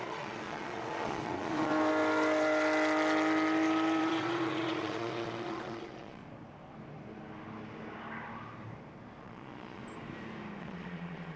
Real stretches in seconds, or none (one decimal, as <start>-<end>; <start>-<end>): 1.7-4.0; 6.2-9.2; 9.8-10.6